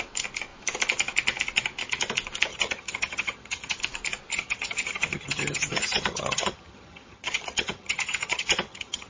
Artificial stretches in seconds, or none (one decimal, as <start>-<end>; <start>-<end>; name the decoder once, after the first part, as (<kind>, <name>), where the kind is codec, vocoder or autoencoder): 2.5-3.8 (vocoder, HiFi-GAN); 4.3-9.1